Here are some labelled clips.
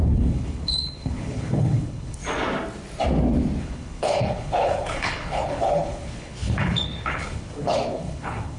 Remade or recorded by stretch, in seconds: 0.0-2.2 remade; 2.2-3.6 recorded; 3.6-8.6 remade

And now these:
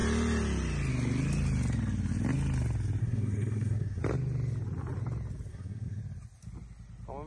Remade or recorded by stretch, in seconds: 0.0-3.0 recorded; 3.0-4.0 remade; 4.0-5.5 recorded; 5.5-6.0 remade; 6.0-7.3 recorded